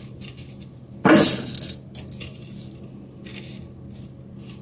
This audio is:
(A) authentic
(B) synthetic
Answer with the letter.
A